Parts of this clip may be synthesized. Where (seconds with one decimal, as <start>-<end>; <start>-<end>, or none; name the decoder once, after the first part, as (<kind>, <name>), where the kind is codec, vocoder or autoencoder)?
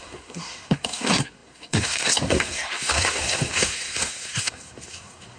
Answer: 0.0-5.4 (codec, SNAC)